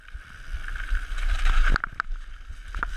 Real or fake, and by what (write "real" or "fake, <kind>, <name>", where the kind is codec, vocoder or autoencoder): real